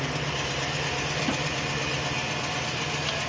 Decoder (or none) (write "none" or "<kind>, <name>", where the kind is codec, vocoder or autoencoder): none